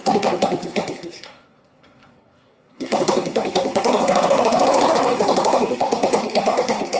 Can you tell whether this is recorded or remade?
remade